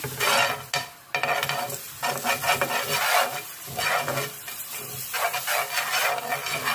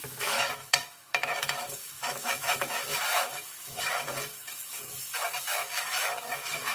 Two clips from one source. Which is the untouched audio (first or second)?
first